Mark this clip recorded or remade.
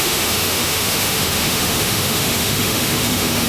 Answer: remade